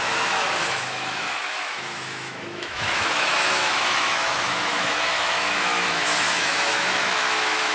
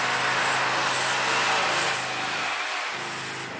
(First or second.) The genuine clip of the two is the second